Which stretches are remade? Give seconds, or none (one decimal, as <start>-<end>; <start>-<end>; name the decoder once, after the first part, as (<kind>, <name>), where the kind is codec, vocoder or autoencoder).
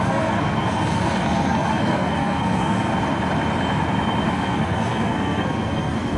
0.0-2.9 (codec, SNAC); 4.3-6.2